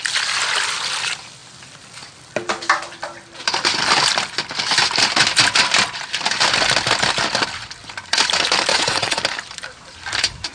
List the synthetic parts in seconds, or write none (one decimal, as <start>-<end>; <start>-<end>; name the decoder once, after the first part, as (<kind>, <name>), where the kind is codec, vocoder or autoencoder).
8.7-9.2 (vocoder, WaveNeXt)